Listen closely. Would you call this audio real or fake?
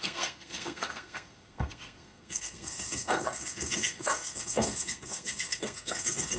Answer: fake